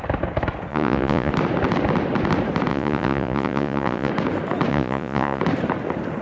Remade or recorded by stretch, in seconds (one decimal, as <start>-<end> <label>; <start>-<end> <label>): 0.0-0.7 recorded; 0.7-1.3 remade; 1.3-2.7 recorded; 2.7-4.1 remade; 4.1-4.7 recorded; 4.7-5.4 remade; 5.4-6.2 recorded